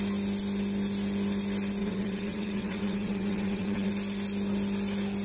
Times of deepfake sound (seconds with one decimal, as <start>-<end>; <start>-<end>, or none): 1.8-3.9

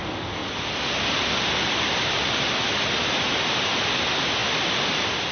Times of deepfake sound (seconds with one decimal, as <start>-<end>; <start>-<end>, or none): 0.0-0.4; 1.0-5.3

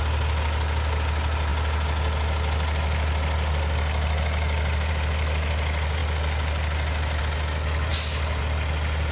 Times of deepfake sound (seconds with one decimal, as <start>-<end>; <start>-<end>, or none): none

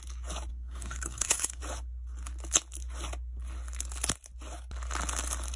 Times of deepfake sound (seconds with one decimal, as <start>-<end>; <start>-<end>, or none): 0.5-1.6